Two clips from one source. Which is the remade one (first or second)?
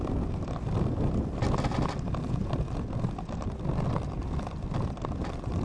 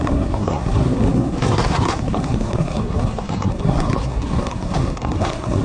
second